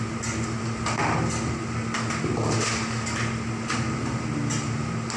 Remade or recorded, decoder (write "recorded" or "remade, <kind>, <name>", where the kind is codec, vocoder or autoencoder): recorded